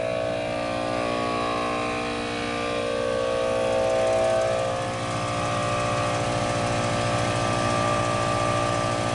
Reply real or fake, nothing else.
real